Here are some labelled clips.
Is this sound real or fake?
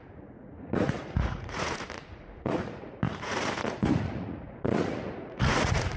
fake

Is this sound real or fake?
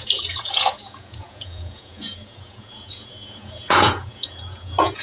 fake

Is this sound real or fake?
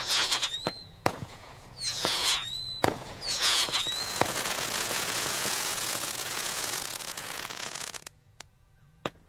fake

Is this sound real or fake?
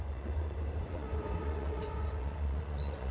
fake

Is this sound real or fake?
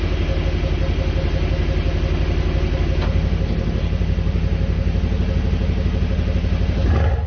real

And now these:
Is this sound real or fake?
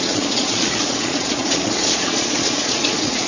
fake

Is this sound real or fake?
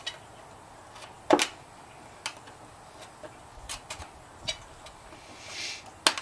real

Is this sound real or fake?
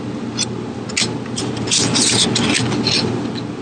real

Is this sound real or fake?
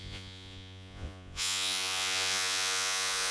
fake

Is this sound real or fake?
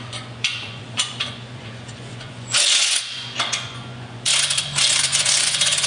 fake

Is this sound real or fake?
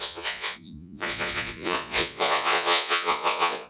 fake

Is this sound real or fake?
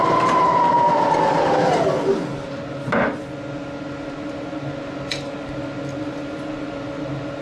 real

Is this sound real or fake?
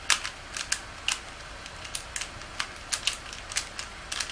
real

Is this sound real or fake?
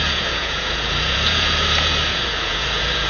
fake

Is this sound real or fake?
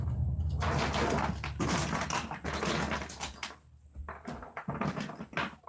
real